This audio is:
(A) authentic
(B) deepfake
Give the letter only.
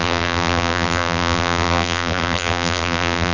B